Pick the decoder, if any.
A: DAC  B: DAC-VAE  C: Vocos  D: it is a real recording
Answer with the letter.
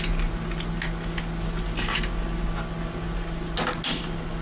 D